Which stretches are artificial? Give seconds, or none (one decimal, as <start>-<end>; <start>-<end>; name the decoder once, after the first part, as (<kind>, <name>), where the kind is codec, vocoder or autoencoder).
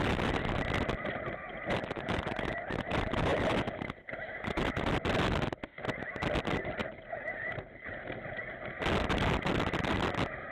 none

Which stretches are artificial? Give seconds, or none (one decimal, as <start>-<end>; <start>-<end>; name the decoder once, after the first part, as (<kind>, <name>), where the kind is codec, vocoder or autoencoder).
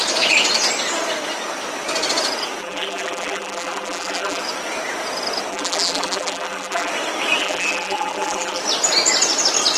2.6-4.4 (vocoder, BigVGAN v2); 5.5-6.9; 7.4-8.6